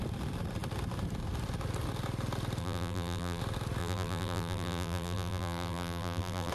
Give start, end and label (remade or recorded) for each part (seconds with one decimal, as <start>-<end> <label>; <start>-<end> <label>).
0.0-2.6 recorded; 2.6-3.4 remade; 3.4-3.8 recorded; 3.8-6.5 remade